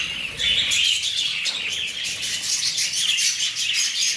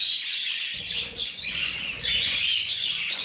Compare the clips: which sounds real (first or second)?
first